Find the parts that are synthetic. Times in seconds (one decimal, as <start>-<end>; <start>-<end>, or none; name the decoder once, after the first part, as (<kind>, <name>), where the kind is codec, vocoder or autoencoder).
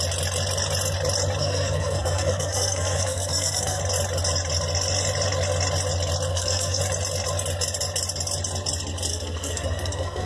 1.4-3.8 (codec, SNAC); 6.3-6.8; 9.1-10.3